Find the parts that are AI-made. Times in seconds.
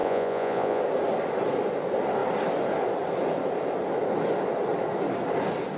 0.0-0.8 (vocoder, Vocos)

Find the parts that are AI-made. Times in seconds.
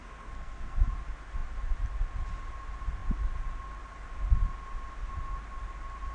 0.0-0.9 (codec, SNAC)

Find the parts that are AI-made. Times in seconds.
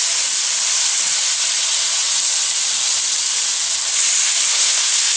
4.5-5.2 (codec, SNAC)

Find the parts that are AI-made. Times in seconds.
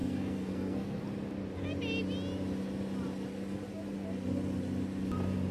0.0-1.0 (codec, SNAC)